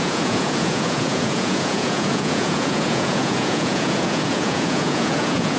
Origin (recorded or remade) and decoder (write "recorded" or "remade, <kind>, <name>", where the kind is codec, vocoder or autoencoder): remade, vocoder, Vocos